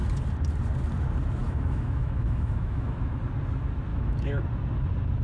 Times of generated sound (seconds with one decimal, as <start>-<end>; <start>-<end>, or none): 1.4-3.2; 3.9-4.4